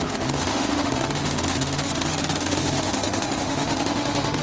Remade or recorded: remade